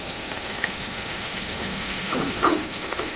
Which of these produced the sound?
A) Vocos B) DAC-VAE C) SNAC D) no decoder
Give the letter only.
B